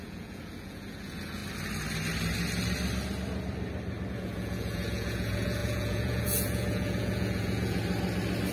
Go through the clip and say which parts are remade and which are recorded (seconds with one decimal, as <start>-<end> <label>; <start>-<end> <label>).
0.0-1.4 remade; 1.4-4.1 recorded; 4.1-7.8 remade; 7.8-8.5 recorded